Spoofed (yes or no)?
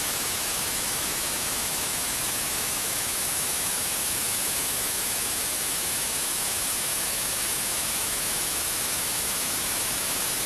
yes